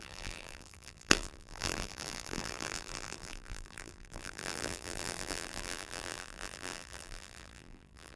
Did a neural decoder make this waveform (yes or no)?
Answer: yes